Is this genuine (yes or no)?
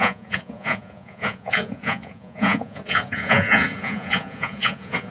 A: no